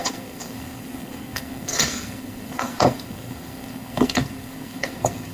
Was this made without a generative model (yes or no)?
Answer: no